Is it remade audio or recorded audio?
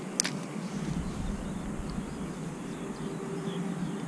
recorded